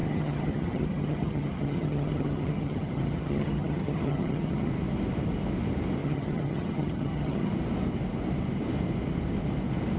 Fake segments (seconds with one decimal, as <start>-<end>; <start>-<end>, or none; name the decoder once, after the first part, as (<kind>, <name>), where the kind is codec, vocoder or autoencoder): 0.0-4.7 (vocoder, HiFi-GAN); 6.0-7.5